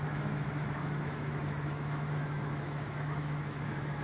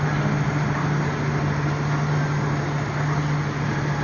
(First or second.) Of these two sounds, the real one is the second